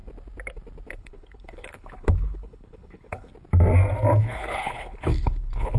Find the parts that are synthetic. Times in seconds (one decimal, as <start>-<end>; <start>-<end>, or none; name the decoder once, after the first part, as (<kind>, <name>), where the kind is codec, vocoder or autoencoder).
0.9-3.3 (codec, HILCodec); 4.2-5.8